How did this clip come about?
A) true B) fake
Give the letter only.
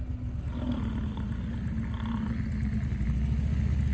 A